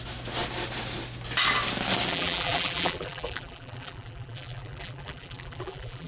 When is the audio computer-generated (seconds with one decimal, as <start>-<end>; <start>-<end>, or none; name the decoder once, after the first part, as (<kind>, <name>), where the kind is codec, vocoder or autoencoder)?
2.1-6.1 (vocoder, BigVGAN v2)